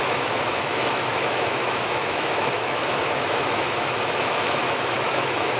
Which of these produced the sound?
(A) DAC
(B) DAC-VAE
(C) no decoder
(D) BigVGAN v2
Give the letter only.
B